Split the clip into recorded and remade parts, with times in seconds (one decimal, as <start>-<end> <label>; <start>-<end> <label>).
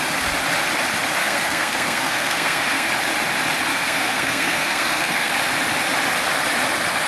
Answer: 0.0-1.2 recorded; 1.2-2.9 remade; 2.9-3.7 recorded; 3.7-5.3 remade; 5.3-7.1 recorded